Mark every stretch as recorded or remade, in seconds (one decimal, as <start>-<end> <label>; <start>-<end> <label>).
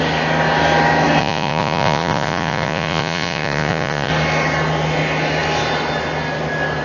0.0-1.2 recorded; 1.2-4.1 remade; 4.1-6.8 recorded